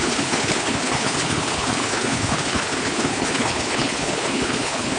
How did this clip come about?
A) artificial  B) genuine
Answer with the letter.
A